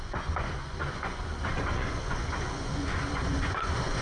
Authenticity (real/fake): fake